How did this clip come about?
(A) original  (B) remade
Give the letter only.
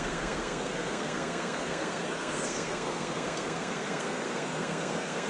B